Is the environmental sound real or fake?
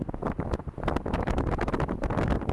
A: real